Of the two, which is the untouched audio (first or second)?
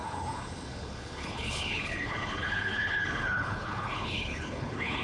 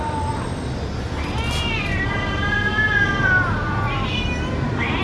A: second